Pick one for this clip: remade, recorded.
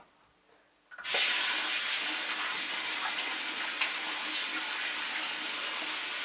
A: recorded